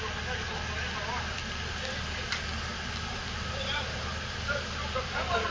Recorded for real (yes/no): yes